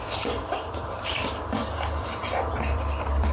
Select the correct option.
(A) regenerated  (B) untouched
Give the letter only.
A